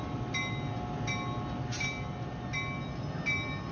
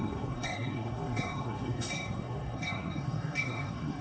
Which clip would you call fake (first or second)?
second